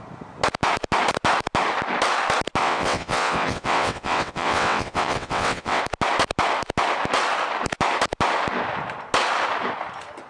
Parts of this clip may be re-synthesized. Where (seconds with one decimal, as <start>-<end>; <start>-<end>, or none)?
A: 2.6-5.8